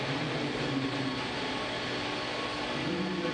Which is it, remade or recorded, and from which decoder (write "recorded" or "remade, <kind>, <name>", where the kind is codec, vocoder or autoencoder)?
recorded